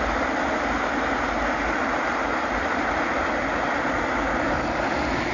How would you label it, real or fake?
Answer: real